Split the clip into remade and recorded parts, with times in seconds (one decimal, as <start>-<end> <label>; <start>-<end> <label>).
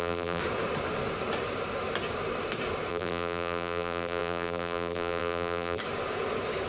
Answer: 0.0-0.4 remade; 0.4-2.9 recorded; 2.9-5.8 remade; 5.8-6.7 recorded